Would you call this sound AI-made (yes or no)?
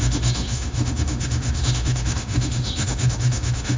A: yes